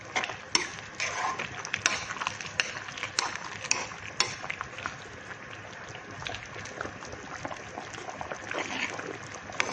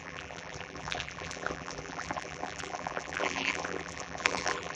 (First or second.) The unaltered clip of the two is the first